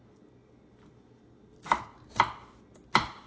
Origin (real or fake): real